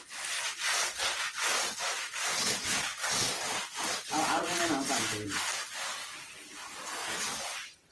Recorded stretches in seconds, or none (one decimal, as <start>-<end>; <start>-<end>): 0.0-2.9; 3.8-7.9